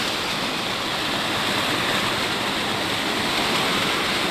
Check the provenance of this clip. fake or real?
real